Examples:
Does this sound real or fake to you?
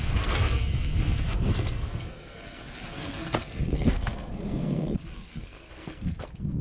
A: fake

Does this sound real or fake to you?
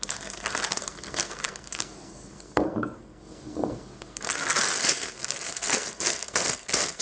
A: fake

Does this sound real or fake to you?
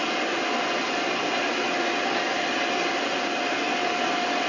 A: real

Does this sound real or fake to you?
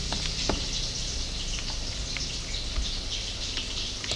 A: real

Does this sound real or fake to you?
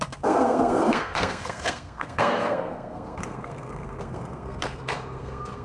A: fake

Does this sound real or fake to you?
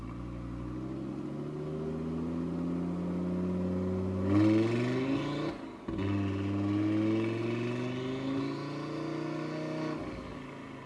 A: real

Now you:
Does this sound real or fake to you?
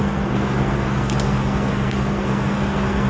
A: fake